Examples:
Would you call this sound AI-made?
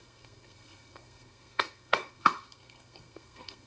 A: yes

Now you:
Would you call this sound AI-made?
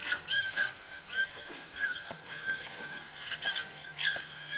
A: yes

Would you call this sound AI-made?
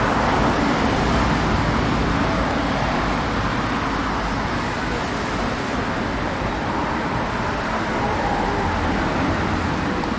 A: no